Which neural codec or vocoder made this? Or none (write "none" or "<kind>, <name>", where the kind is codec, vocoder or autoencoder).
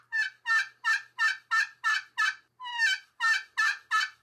none